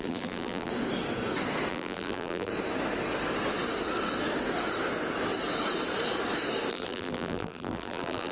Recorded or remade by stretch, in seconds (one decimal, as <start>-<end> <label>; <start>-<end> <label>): 0.0-0.7 remade; 0.7-1.7 recorded; 1.7-2.5 remade; 2.5-6.7 recorded; 6.7-8.3 remade